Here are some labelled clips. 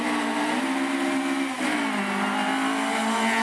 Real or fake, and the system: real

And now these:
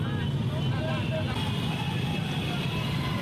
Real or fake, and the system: real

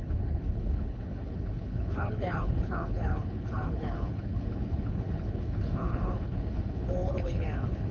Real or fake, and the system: fake, codec, HILCodec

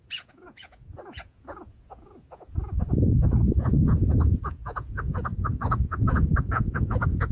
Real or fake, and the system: fake, vocoder, Vocos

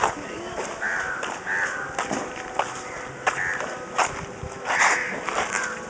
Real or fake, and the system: real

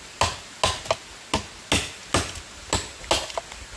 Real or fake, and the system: real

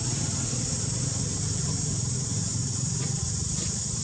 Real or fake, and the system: fake, vocoder, BigVGAN v2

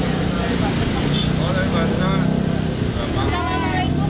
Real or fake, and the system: real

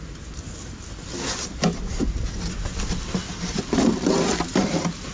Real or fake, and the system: real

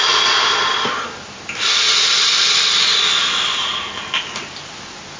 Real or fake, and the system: real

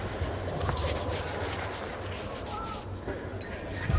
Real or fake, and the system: real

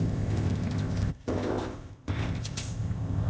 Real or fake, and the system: fake, codec, ZipCodec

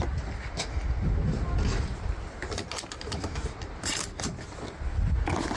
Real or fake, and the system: real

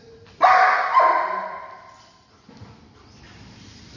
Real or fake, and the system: real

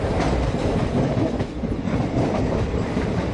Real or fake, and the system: real